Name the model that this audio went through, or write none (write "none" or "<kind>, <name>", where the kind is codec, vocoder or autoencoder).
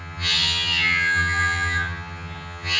vocoder, HiFi-GAN